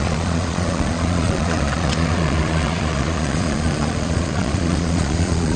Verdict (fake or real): fake